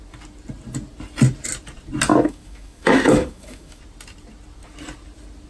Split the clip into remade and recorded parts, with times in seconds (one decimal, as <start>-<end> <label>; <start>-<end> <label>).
0.0-2.1 recorded; 2.1-3.8 remade; 3.8-5.5 recorded